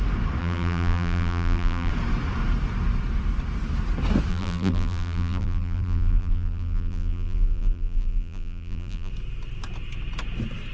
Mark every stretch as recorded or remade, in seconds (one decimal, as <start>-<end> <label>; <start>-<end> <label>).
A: 0.0-0.4 recorded; 0.4-1.9 remade; 1.9-4.3 recorded; 4.3-9.1 remade; 9.1-10.7 recorded